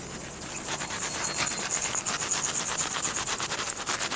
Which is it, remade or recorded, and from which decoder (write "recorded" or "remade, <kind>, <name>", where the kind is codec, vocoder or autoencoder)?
recorded